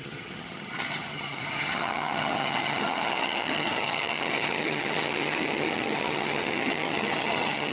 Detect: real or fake fake